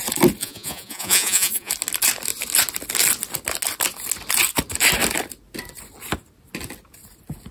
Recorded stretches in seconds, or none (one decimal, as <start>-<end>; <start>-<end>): 0.0-0.4; 1.7-7.5